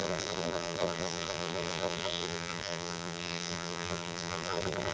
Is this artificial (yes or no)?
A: yes